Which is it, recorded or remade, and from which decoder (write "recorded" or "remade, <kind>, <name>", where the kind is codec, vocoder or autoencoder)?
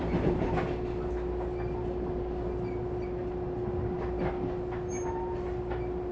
recorded